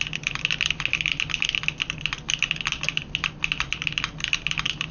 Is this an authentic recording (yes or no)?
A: yes